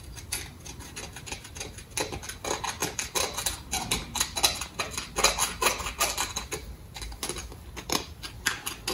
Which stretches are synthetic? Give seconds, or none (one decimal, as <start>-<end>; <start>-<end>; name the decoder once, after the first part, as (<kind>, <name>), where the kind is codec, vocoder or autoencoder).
none